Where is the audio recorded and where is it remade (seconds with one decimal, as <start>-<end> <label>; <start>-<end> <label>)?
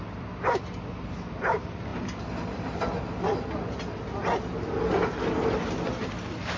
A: 0.0-6.6 recorded